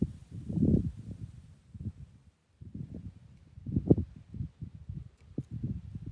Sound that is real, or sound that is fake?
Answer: fake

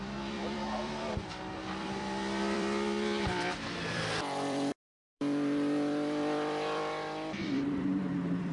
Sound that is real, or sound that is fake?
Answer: fake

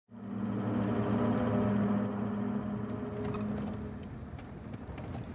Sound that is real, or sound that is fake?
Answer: real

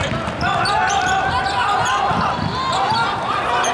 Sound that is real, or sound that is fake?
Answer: real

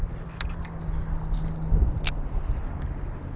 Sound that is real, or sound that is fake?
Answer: real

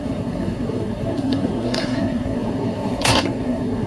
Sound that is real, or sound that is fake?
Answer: fake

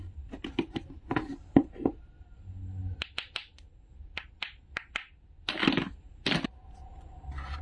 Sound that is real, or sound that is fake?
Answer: real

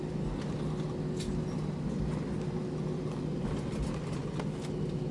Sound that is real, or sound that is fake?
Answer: real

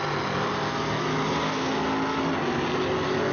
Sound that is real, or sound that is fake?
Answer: real